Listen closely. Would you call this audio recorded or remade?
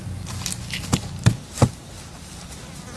recorded